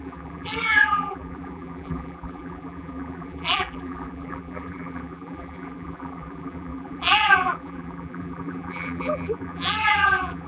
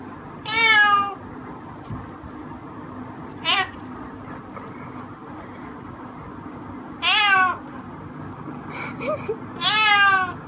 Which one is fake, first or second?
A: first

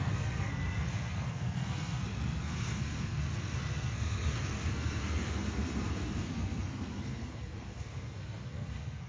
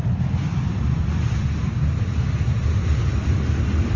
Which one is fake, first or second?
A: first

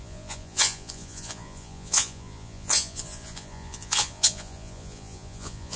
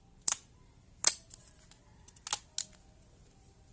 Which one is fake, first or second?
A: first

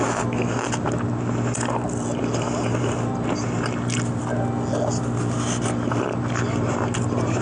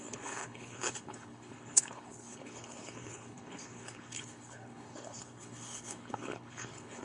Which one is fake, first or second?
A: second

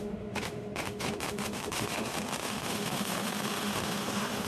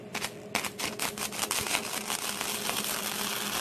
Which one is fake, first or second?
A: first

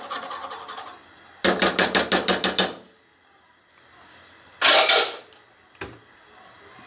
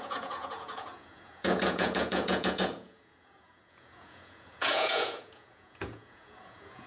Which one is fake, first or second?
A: second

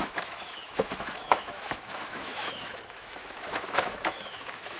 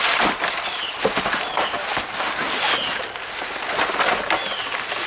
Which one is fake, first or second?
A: first